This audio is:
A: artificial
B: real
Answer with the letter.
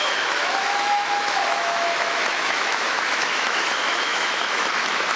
A